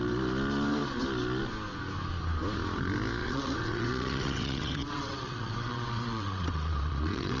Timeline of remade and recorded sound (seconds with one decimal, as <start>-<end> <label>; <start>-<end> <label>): 0.0-3.2 recorded; 3.2-7.4 remade